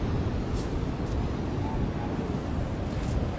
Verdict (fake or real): real